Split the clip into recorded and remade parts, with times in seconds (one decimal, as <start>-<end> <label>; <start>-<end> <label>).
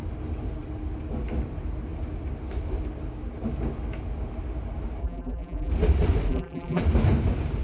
0.0-5.0 recorded; 5.0-5.7 remade; 5.7-6.3 recorded; 6.3-6.8 remade; 6.8-7.6 recorded